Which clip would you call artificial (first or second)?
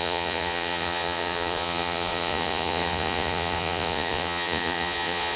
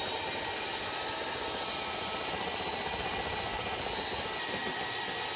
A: first